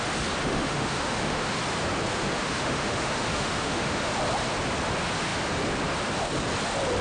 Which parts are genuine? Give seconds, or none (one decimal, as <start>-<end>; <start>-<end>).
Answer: 0.0-0.4; 1.6-2.1; 4.1-7.0